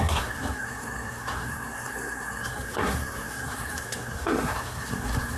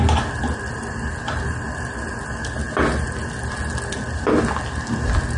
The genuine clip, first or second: second